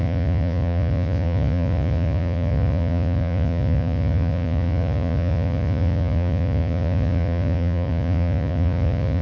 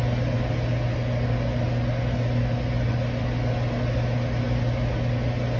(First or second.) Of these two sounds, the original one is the second